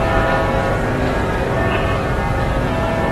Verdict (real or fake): real